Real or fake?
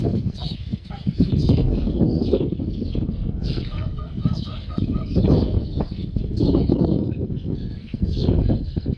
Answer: fake